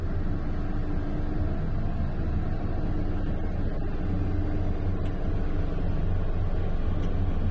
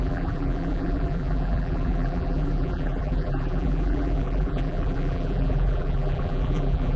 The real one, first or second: first